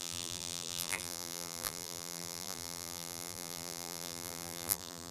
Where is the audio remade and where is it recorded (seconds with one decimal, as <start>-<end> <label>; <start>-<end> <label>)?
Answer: 0.0-5.1 remade